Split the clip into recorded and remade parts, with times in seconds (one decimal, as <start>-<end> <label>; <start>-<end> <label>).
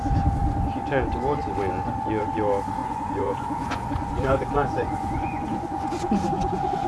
0.0-2.8 recorded; 2.8-6.9 remade